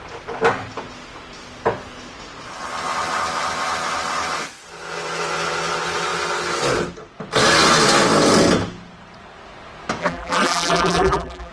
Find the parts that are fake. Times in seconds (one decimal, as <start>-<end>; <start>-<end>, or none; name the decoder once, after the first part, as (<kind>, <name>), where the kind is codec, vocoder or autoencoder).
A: 10.0-11.5 (vocoder, BigVGAN v2)